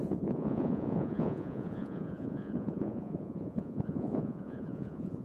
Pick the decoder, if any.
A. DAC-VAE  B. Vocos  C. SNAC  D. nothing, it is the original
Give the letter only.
B